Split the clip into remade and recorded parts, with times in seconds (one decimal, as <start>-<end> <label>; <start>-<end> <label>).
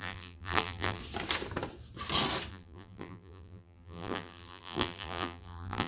0.0-1.0 remade; 1.0-2.5 recorded; 2.5-5.9 remade